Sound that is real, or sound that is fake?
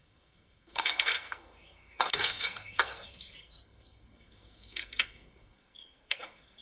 fake